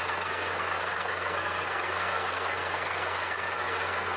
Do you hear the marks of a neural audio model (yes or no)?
yes